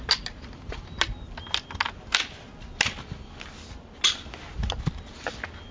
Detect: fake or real real